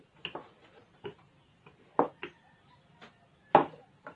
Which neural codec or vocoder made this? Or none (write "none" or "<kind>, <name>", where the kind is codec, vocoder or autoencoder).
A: none